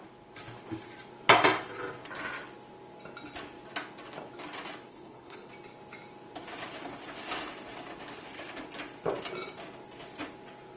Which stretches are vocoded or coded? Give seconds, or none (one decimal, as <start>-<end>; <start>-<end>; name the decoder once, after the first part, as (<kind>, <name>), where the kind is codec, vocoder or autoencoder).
4.9-5.5 (codec, HILCodec)